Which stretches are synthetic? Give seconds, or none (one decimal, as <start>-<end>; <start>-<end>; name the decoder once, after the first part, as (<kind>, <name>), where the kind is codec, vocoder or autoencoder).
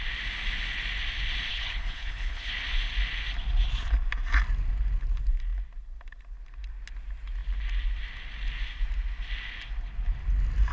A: 1.5-2.5 (codec, HILCodec)